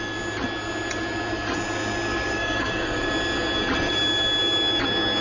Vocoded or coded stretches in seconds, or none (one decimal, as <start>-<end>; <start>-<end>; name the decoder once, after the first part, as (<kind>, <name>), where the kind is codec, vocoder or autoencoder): 2.1-3.1 (codec, DAC)